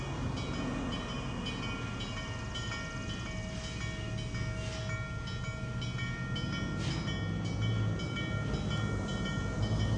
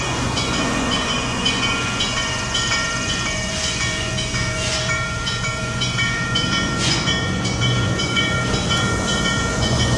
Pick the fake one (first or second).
second